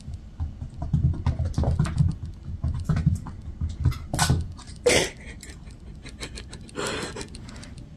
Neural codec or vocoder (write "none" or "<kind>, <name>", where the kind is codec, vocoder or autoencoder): none